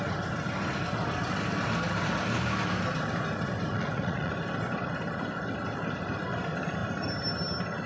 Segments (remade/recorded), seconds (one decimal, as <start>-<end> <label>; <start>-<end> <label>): 0.0-3.7 recorded; 3.7-4.3 remade; 4.3-7.9 recorded